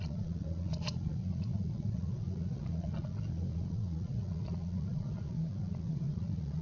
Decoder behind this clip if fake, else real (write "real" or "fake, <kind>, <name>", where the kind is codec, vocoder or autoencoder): fake, vocoder, Vocos